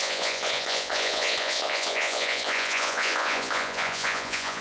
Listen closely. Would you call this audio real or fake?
fake